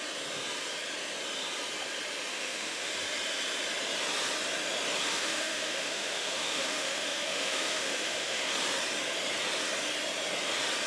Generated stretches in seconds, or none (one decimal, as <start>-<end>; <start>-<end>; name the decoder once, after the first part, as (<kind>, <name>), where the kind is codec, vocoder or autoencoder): 2.3-2.9 (autoencoder, DAC-VAE); 5.1-8.5